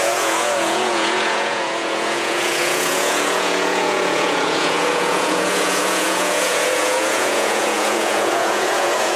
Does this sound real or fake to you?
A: fake